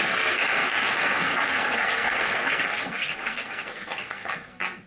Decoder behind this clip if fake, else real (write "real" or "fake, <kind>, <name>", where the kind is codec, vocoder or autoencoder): fake, codec, SNAC